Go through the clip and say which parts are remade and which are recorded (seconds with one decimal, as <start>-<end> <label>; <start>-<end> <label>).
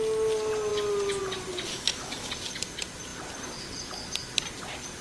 0.0-1.7 recorded; 1.7-2.3 remade; 2.3-5.0 recorded